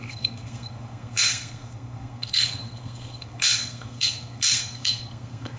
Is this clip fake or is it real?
fake